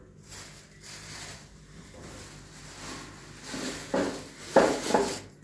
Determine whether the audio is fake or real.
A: real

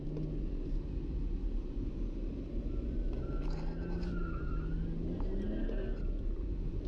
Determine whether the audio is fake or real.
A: real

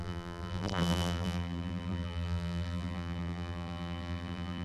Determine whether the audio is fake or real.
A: fake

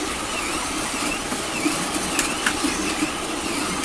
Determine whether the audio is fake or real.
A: real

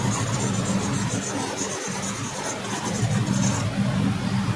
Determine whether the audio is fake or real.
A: real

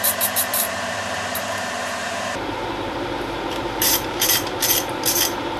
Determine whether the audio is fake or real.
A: fake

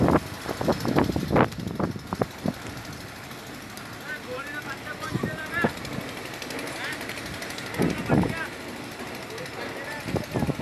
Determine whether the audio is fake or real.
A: real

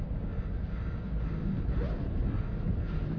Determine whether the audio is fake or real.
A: real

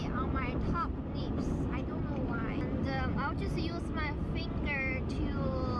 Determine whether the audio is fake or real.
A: real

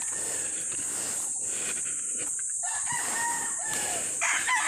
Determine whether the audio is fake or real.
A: real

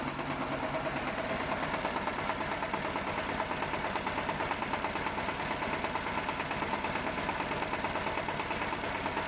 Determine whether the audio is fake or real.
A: real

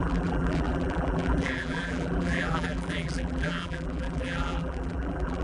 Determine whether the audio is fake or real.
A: fake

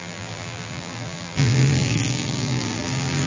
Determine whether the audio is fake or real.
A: fake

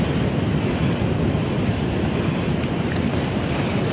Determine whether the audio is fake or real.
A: fake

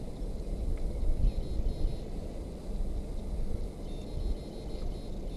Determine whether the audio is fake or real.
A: real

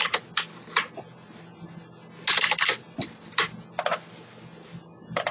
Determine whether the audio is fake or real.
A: real